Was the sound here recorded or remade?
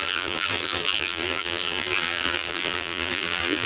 remade